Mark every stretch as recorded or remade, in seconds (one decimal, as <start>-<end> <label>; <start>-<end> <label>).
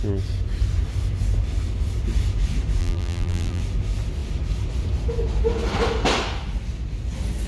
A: 0.0-2.8 recorded; 2.8-3.6 remade; 3.6-7.5 recorded